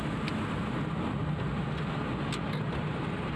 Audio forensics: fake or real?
real